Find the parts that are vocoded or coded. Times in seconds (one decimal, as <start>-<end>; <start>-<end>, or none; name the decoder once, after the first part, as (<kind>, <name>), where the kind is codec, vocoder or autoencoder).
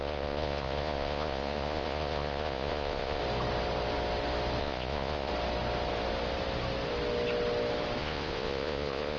0.0-3.2 (vocoder, Vocos); 4.6-5.3; 8.0-9.2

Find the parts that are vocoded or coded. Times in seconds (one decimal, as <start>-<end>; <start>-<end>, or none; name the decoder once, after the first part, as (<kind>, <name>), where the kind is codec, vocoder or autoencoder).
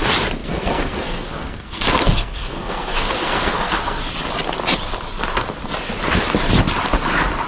0.4-4.0 (codec, SNAC)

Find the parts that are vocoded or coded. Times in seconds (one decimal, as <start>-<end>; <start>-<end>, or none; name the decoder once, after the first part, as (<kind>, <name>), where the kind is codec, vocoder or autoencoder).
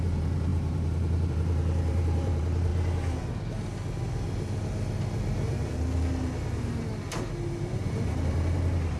0.0-2.7 (vocoder, BigVGAN v2); 7.9-9.0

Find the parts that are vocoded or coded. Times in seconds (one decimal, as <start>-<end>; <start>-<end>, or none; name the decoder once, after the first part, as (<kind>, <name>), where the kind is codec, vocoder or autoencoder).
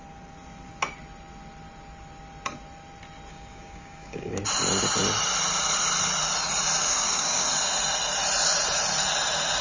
3.3-4.4 (codec, DAC); 6.8-7.5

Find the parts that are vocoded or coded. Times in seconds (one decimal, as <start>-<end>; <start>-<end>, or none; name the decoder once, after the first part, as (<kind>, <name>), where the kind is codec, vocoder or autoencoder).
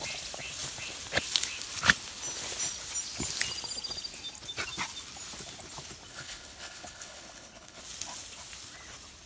6.1-7.8 (codec, HILCodec)